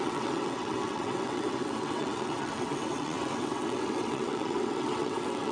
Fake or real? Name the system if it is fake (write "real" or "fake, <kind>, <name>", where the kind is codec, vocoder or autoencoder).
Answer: fake, vocoder, WaveNeXt